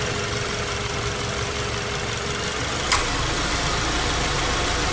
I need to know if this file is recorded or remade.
recorded